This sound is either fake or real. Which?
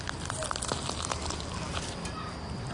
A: fake